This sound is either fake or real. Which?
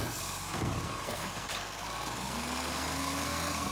fake